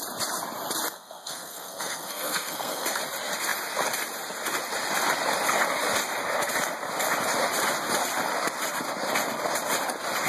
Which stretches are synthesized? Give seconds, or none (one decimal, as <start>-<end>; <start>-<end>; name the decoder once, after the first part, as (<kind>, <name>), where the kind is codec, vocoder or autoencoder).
0.9-3.0 (codec, SNAC)